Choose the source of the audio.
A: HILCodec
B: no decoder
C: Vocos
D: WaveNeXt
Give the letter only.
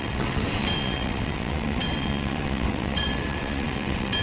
D